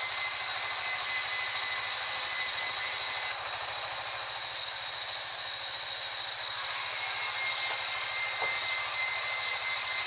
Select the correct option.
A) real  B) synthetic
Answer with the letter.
A